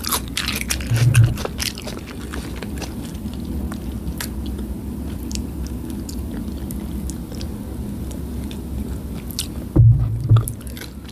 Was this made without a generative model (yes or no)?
yes